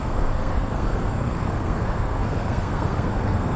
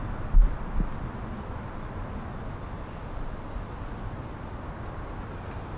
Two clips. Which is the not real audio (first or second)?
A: first